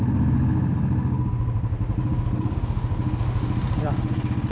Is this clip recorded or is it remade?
recorded